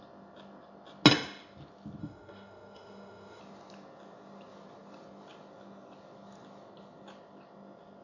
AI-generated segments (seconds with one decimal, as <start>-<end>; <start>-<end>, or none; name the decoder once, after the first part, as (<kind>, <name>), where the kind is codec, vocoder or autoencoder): 2.0-3.4 (autoencoder, DAC-VAE)